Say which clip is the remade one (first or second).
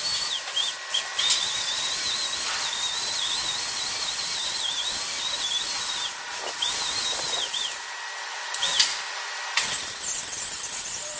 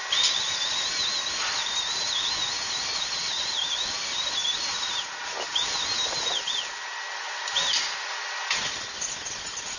first